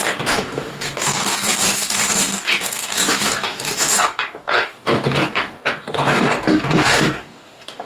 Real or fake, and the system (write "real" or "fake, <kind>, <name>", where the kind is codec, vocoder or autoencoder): fake, codec, DAC